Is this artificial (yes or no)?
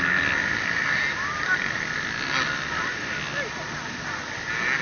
no